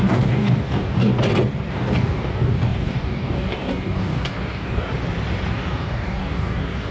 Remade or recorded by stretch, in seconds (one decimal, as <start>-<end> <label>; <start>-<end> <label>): 0.0-1.1 remade; 1.1-1.7 recorded; 1.7-4.9 remade; 4.9-5.5 recorded; 5.5-6.9 remade